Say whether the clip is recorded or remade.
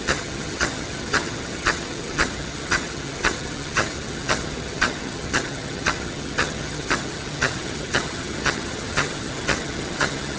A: remade